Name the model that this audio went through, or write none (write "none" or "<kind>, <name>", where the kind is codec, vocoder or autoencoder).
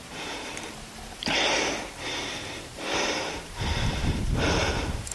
vocoder, BigVGAN v2